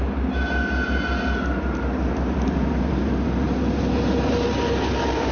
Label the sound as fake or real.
real